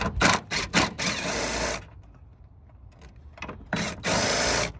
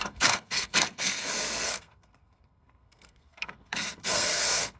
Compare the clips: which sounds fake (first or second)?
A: second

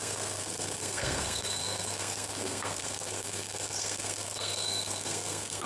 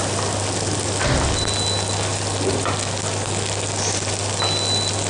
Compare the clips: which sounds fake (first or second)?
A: first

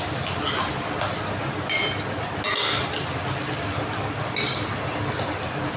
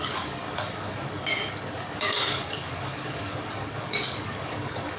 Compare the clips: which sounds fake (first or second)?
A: second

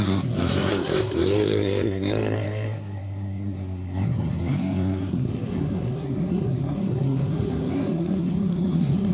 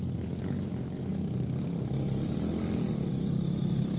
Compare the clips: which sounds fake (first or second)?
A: first